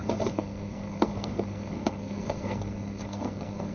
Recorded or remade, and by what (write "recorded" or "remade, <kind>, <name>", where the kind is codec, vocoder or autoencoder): remade, codec, SNAC